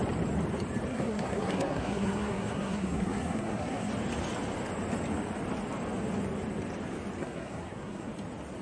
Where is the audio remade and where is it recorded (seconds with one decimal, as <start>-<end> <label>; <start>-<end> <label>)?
0.0-0.9 recorded; 0.9-3.9 remade; 3.9-7.2 recorded; 7.2-8.1 remade; 8.1-8.6 recorded